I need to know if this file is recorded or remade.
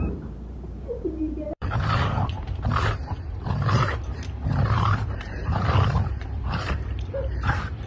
remade